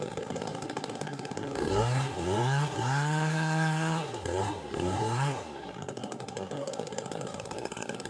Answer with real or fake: fake